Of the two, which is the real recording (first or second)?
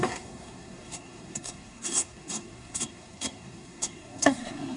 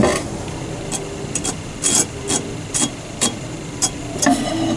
second